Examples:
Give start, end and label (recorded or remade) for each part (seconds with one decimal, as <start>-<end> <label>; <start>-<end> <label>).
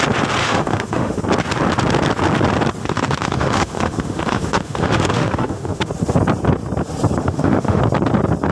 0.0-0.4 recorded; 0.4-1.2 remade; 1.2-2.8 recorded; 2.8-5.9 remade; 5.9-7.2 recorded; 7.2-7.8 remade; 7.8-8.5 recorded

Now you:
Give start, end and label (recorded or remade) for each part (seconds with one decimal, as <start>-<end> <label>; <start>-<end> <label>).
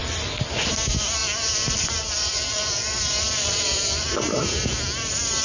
0.0-0.6 remade; 0.6-1.2 recorded; 1.2-4.4 remade; 4.4-5.4 recorded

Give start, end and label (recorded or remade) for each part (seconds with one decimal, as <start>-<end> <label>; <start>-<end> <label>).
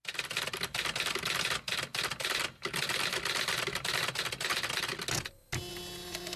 0.0-6.4 recorded